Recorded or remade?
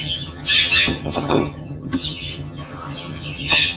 remade